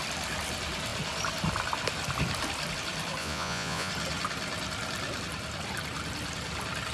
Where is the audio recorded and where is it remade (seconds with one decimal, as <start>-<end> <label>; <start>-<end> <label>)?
0.0-3.2 recorded; 3.2-3.9 remade; 3.9-6.9 recorded